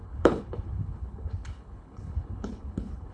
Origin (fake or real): fake